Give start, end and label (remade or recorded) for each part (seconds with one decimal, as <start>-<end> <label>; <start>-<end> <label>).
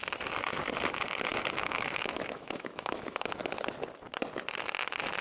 0.0-1.3 recorded; 1.3-3.4 remade; 3.4-5.2 recorded